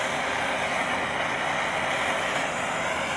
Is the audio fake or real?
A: real